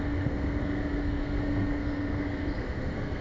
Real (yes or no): no